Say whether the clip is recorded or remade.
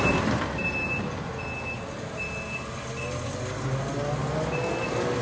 recorded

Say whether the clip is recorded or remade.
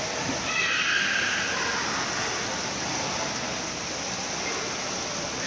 recorded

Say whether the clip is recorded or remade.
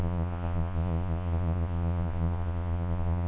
remade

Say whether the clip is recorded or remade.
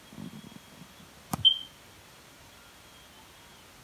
recorded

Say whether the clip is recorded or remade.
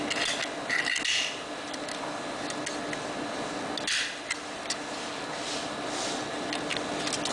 recorded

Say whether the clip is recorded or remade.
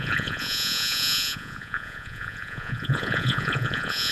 remade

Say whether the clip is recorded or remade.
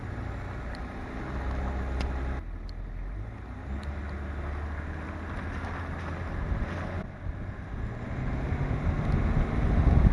recorded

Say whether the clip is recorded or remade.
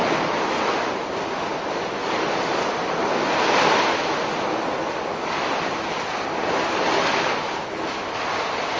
recorded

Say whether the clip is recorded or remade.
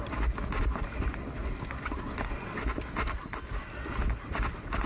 recorded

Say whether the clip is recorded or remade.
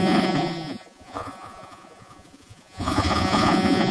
remade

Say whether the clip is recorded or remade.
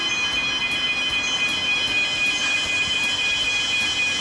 recorded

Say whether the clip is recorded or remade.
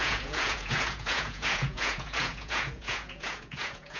remade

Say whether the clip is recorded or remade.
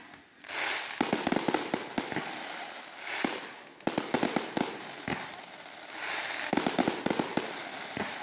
recorded